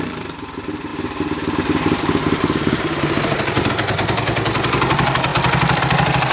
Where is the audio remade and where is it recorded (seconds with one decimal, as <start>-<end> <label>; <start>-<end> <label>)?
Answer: 0.0-5.3 remade; 5.3-5.8 recorded; 5.8-6.3 remade